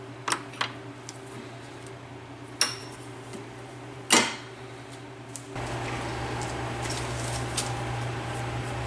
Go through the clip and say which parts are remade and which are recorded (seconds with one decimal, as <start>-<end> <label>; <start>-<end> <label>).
0.0-2.8 recorded; 2.8-4.1 remade; 4.1-8.9 recorded

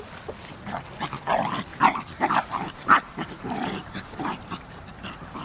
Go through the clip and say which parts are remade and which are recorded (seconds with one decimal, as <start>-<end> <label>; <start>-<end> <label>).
0.0-1.7 recorded; 1.7-4.9 remade; 4.9-5.4 recorded

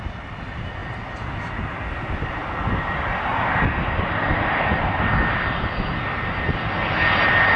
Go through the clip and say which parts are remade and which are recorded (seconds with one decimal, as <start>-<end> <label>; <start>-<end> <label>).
0.0-7.6 recorded

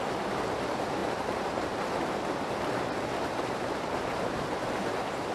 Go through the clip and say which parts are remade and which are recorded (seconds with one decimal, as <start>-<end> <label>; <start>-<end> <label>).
0.0-5.3 remade

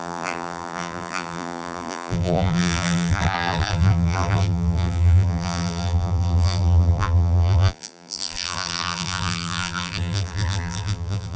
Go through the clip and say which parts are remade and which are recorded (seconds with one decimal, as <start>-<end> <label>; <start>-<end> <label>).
0.0-11.4 remade

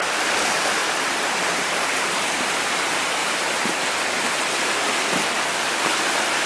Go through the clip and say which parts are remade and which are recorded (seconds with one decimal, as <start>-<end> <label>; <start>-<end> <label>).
0.0-0.8 recorded; 0.8-2.8 remade; 2.8-3.2 recorded; 3.2-3.8 remade; 3.8-6.5 recorded

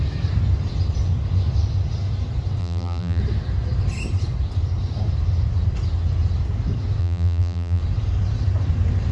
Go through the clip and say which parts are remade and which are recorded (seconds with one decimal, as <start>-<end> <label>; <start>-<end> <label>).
0.0-2.6 recorded; 2.6-3.2 remade; 3.2-7.0 recorded; 7.0-7.8 remade; 7.8-9.1 recorded

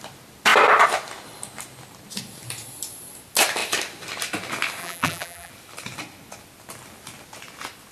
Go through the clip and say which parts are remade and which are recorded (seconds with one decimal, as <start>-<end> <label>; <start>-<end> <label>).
0.0-4.8 recorded; 4.8-5.5 remade; 5.5-7.9 recorded